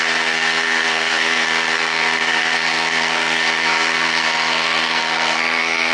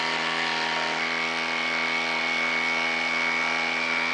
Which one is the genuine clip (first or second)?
second